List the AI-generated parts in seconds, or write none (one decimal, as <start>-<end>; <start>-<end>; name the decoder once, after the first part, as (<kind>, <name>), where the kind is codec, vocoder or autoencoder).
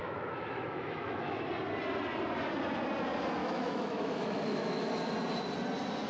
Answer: 0.0-1.5 (autoencoder, DAC-VAE); 3.4-4.9